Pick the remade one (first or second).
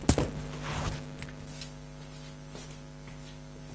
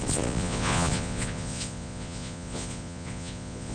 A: second